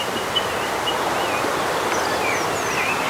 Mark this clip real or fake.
real